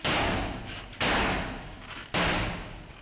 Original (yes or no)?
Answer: yes